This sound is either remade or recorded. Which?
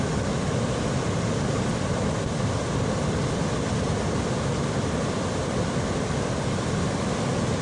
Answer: recorded